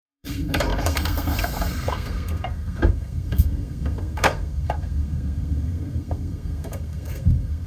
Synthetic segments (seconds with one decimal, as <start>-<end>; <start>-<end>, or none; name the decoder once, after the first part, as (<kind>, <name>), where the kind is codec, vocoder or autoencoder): 0.0-7.7 (codec, SNAC)